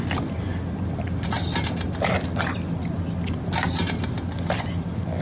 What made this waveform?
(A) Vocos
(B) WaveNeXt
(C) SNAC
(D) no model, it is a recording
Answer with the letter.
D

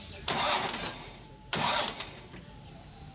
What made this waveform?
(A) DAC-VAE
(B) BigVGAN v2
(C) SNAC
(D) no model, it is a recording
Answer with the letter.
B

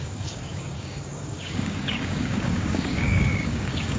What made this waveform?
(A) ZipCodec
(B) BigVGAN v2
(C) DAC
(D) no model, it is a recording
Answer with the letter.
C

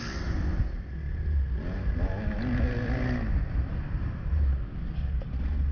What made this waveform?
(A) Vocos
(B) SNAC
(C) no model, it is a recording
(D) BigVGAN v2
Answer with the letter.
C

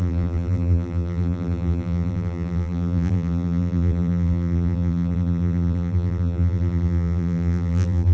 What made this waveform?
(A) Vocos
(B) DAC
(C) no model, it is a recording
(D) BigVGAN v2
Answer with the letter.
D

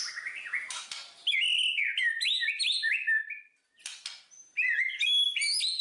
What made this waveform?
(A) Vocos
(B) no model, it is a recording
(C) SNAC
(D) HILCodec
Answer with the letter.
B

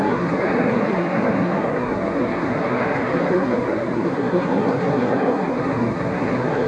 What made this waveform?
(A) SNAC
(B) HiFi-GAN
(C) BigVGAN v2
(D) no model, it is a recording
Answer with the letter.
A